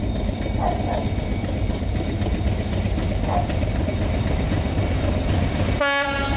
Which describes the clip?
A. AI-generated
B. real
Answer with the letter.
B